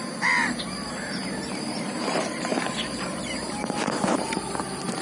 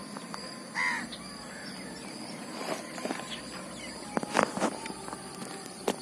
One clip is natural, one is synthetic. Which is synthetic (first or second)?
first